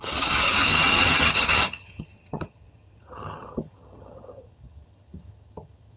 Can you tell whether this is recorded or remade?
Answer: remade